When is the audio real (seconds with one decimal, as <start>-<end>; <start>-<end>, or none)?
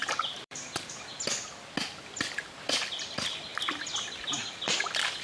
0.6-5.2